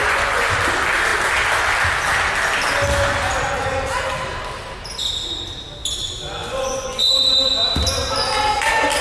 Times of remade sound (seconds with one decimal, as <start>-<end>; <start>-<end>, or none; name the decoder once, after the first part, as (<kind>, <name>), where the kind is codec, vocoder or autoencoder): 0.0-0.5 (vocoder, Vocos); 6.4-7.1